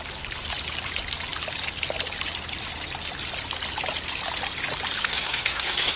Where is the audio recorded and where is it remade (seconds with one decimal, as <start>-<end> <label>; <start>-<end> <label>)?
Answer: 0.0-5.1 recorded; 5.1-6.0 remade